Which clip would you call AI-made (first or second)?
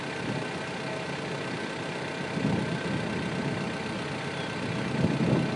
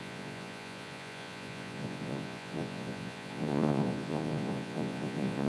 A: second